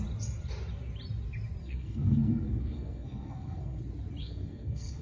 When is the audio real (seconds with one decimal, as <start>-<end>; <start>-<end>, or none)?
0.0-1.6; 3.8-4.2

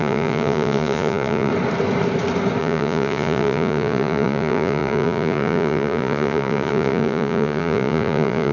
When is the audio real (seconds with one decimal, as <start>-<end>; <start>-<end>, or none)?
1.5-2.6

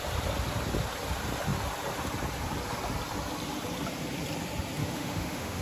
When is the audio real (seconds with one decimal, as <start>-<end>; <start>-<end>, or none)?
0.0-4.8

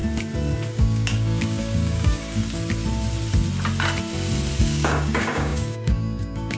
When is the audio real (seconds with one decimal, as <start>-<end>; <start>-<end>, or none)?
0.0-0.7; 2.4-4.6

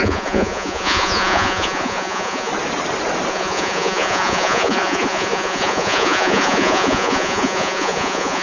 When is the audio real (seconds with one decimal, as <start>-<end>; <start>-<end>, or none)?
2.5-3.3

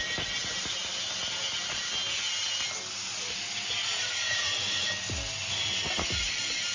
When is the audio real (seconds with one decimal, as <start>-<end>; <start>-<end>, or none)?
0.0-4.0; 4.9-5.4; 6.3-6.7

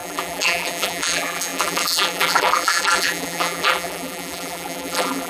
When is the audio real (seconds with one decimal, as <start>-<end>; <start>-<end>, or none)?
none